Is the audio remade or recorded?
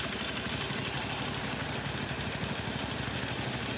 recorded